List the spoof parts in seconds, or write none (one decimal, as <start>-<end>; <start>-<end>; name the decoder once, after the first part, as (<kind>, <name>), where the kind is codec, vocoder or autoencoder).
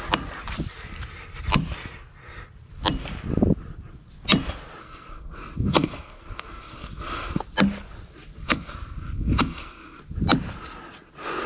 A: 4.8-7.4 (codec, SNAC); 8.4-10.0